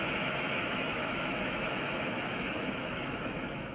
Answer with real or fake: fake